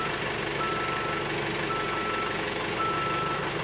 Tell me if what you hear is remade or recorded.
recorded